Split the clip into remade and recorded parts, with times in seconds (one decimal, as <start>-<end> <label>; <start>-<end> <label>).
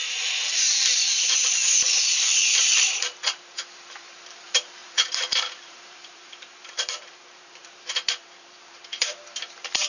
0.0-9.9 remade